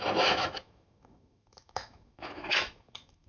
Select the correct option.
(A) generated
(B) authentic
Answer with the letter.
A